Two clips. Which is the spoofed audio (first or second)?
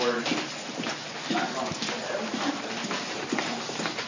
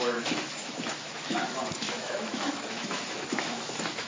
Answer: second